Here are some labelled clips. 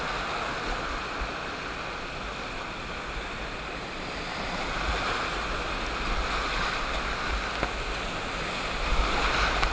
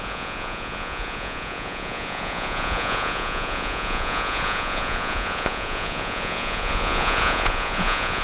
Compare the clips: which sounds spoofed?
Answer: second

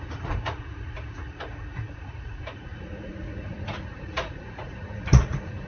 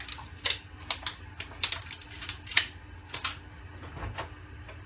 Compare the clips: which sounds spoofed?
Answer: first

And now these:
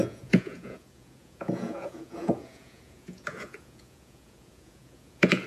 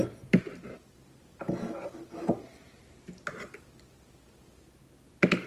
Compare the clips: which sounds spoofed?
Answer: first